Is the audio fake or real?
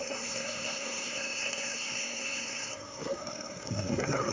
fake